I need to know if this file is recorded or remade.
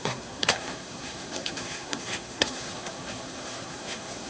remade